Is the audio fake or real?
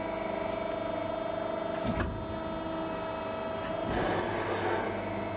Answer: real